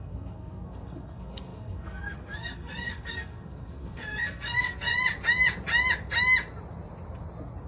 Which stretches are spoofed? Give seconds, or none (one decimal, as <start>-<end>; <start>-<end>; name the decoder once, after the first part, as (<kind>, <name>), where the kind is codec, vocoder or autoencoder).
0.0-4.9 (codec, SNAC)